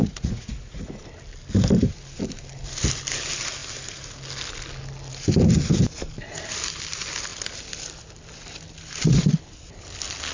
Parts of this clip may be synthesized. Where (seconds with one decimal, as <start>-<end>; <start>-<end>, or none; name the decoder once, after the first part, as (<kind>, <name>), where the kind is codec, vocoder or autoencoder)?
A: 0.0-1.0 (vocoder, Vocos)